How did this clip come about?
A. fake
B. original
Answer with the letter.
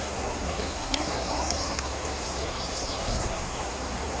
A